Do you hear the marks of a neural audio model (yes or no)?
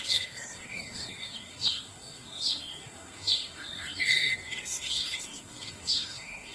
yes